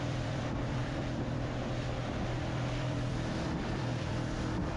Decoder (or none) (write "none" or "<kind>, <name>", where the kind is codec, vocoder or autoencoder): vocoder, BigVGAN v2